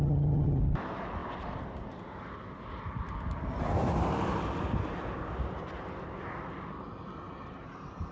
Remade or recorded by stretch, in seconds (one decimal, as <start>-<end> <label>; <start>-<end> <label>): 0.0-0.6 remade; 0.6-8.1 recorded